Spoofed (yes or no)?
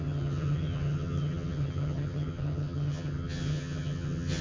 yes